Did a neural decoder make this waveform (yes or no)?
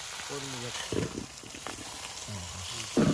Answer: no